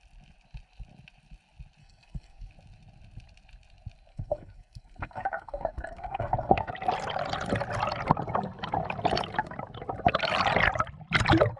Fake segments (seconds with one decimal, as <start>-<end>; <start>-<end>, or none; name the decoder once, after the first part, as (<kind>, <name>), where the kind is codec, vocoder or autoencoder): 1.8-2.5 (codec, SNAC); 4.1-6.7